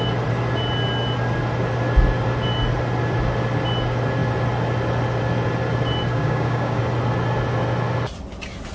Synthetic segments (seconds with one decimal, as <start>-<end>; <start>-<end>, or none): 6.1-6.8